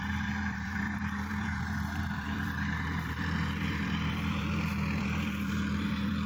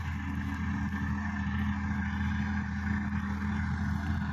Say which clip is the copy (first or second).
first